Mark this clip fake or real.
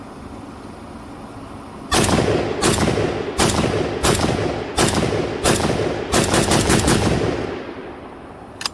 real